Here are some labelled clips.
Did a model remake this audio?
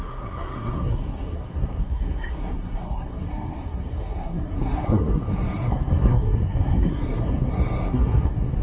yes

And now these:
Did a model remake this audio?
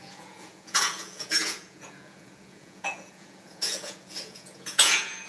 yes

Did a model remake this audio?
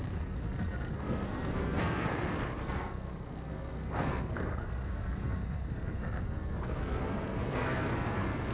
yes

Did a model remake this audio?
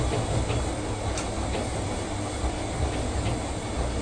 no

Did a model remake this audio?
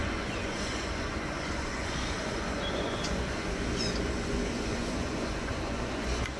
yes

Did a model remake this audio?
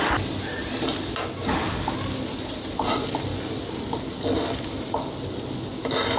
no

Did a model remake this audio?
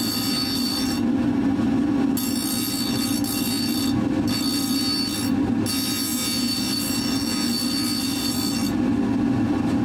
no